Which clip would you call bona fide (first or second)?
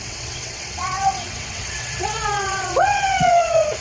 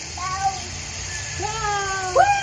second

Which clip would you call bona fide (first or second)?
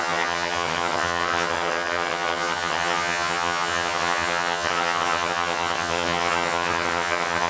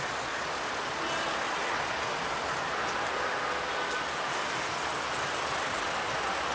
second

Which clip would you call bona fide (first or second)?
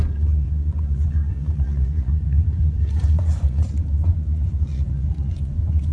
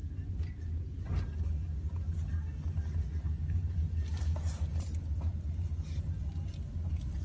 second